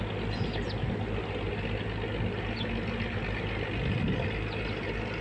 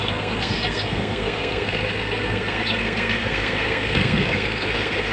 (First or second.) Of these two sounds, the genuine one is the first